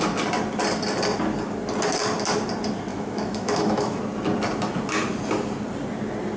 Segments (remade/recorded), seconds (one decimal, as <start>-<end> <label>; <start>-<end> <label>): 0.0-2.9 recorded; 2.9-4.0 remade; 4.0-6.4 recorded